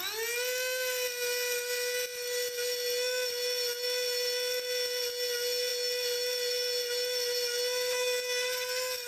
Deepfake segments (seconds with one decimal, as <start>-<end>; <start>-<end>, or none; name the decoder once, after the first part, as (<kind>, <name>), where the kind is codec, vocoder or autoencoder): none